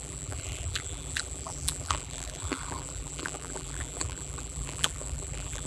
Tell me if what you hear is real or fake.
fake